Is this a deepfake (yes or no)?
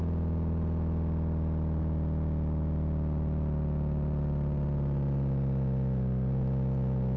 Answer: no